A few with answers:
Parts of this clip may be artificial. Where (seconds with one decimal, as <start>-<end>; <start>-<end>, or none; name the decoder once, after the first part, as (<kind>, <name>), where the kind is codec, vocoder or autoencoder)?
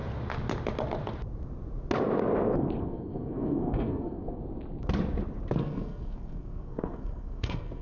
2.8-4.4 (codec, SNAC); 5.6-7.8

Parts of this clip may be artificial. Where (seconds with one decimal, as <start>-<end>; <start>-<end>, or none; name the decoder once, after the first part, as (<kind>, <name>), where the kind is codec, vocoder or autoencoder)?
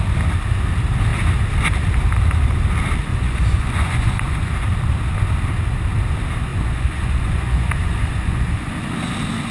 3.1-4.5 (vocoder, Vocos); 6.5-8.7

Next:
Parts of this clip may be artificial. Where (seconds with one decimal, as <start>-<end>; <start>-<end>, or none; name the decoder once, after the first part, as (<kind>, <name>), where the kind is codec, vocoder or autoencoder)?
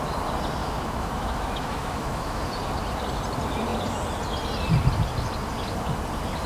0.6-2.4 (autoencoder, DAC-VAE)